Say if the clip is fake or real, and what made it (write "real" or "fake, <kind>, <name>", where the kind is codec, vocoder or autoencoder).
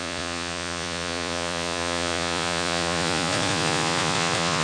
fake, vocoder, Vocos